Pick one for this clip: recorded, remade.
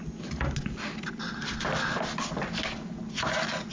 recorded